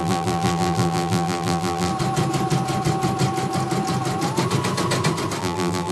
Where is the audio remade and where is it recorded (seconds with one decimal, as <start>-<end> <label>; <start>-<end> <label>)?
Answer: 0.0-1.9 remade; 1.9-5.4 recorded; 5.4-5.9 remade